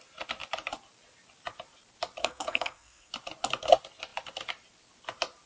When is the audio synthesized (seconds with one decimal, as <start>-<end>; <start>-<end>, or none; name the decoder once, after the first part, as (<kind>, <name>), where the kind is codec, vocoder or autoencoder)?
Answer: 2.2-3.1 (codec, SNAC)